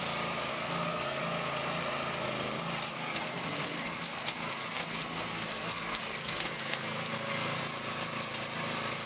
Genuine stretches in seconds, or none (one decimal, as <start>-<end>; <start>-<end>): 0.0-0.5; 1.2-2.9; 7.6-9.1